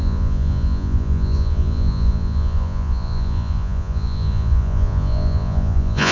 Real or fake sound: fake